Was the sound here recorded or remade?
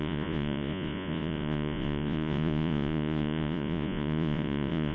remade